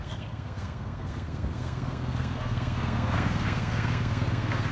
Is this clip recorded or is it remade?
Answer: remade